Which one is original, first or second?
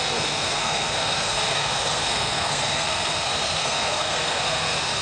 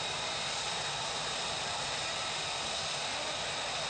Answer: second